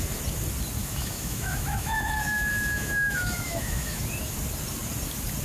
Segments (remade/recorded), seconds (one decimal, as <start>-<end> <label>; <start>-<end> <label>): 0.0-0.8 recorded; 0.8-4.0 remade; 4.0-5.4 recorded